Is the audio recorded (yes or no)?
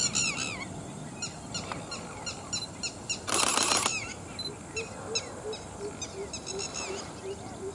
yes